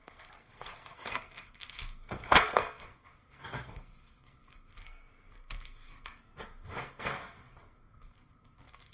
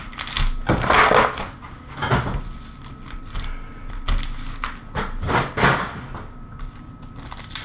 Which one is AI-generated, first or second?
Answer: first